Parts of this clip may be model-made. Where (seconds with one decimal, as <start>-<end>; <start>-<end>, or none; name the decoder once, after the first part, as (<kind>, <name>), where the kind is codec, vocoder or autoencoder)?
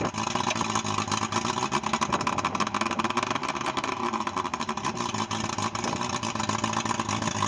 3.4-6.4 (vocoder, BigVGAN v2)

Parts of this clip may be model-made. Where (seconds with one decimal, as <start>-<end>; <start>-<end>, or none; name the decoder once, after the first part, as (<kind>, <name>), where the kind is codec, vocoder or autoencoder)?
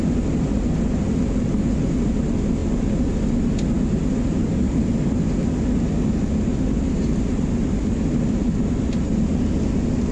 none